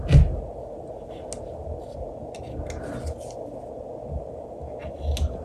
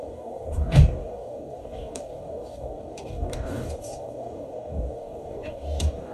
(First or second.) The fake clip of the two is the second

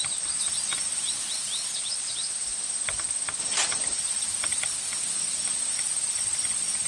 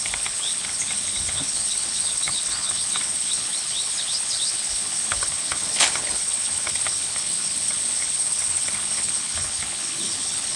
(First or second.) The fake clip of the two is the second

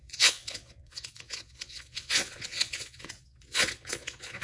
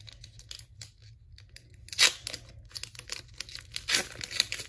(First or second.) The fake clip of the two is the first